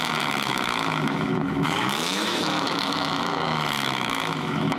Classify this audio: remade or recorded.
remade